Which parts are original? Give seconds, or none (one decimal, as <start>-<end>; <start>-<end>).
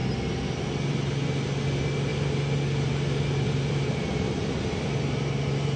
0.9-2.1